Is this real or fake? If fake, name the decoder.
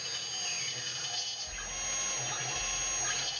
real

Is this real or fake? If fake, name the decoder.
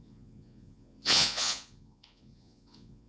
fake, vocoder, Vocos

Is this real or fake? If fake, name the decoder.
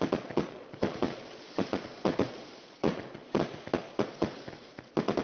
fake, vocoder, Vocos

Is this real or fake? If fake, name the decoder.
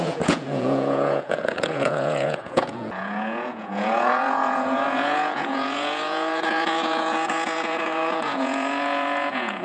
fake, vocoder, Vocos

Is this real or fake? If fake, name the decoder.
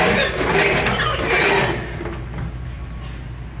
real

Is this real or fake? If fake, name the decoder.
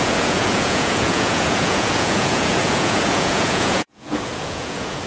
fake, vocoder, Vocos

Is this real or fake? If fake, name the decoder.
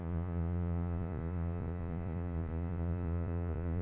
fake, vocoder, Vocos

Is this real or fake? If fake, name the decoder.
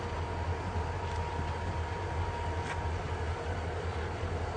real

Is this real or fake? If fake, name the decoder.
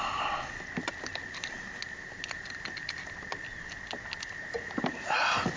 real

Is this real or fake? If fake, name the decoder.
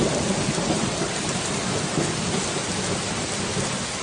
real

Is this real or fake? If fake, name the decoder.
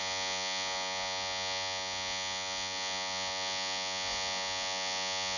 fake, vocoder, Vocos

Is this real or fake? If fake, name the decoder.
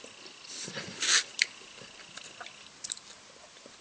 real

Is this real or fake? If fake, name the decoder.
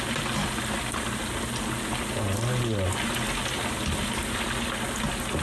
real